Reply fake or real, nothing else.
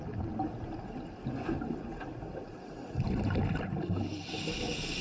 real